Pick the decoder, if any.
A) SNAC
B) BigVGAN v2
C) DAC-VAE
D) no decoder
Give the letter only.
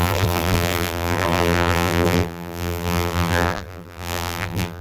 B